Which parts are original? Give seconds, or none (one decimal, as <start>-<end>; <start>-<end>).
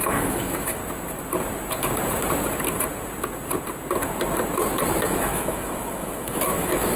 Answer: 0.8-5.0